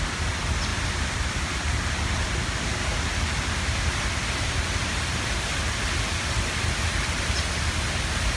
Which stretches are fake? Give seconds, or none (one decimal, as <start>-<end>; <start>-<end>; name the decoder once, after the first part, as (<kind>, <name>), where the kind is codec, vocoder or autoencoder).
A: none